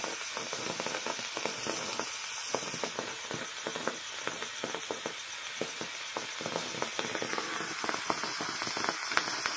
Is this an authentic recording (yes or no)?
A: yes